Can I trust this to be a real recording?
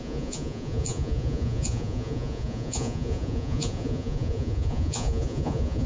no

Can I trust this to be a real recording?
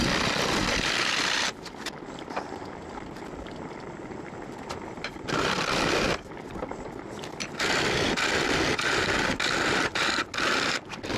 yes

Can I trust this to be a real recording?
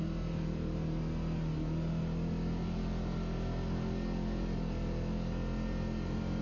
yes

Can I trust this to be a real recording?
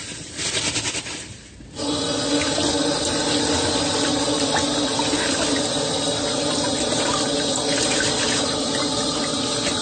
yes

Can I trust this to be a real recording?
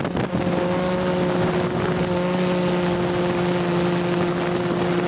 yes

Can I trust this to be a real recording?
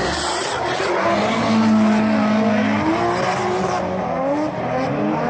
yes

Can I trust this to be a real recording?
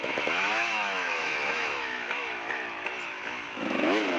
no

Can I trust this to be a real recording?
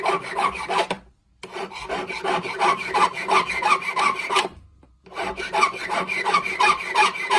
no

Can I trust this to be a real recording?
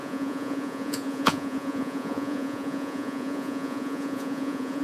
no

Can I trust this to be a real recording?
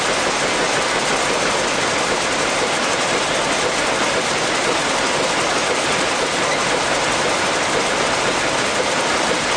yes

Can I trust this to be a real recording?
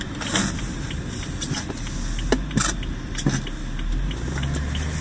yes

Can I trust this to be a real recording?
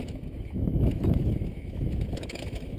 no